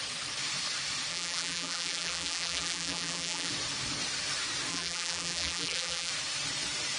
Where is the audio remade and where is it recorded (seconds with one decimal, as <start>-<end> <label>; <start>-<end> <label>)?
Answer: 0.0-1.1 recorded; 1.1-3.5 remade; 3.5-4.7 recorded; 4.7-6.1 remade; 6.1-7.0 recorded